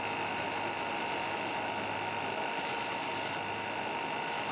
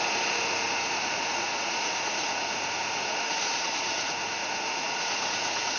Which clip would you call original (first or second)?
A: first